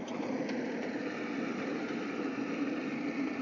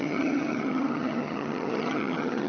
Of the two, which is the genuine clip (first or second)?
first